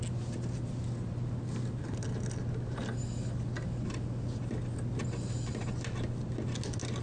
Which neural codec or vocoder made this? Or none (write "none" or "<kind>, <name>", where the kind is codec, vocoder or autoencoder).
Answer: none